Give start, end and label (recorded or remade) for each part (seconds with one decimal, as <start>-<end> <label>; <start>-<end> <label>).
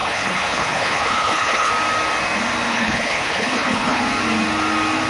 0.0-1.7 remade; 1.7-2.7 recorded; 2.7-4.0 remade; 4.0-5.1 recorded